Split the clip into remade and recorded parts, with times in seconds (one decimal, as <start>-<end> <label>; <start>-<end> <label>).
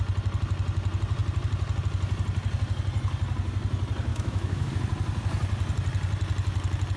0.0-4.1 recorded; 4.1-4.7 remade; 4.7-7.0 recorded